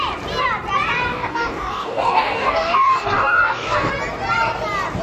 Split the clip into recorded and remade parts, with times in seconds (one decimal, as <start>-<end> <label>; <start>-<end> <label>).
0.0-1.1 recorded; 1.1-3.9 remade; 3.9-5.0 recorded